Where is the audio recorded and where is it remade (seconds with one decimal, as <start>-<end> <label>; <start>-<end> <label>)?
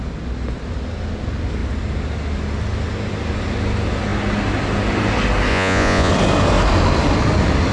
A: 0.0-5.5 recorded; 5.5-6.1 remade; 6.1-7.7 recorded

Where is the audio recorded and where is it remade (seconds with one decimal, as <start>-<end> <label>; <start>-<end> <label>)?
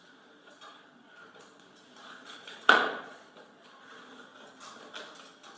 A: 0.0-4.3 remade; 4.3-5.6 recorded